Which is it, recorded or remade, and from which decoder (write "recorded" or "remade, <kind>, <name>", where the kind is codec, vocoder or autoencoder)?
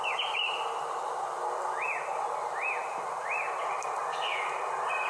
recorded